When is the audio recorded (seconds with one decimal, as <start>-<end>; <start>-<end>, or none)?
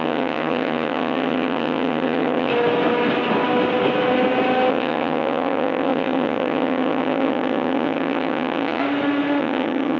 2.5-4.7; 8.8-9.4